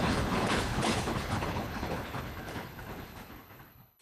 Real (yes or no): no